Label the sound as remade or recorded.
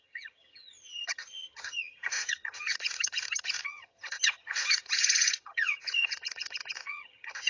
remade